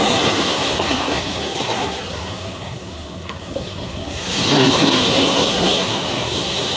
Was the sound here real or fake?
fake